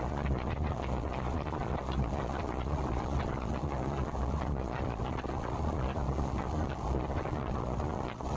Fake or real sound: fake